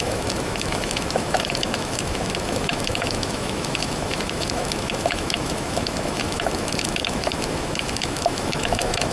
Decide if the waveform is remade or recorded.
remade